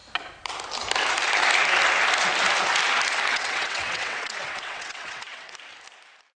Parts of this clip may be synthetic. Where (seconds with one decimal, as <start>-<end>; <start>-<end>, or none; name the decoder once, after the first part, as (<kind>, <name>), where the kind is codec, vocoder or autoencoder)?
3.3-5.5 (vocoder, WaveNeXt)